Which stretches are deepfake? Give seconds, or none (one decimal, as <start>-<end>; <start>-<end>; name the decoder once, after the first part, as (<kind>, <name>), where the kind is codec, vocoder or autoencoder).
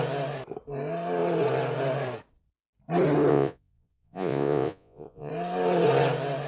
3.3-5.3 (vocoder, Vocos)